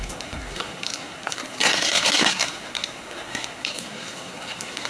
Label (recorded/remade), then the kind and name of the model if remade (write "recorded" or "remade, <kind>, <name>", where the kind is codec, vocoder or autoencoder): remade, codec, SNAC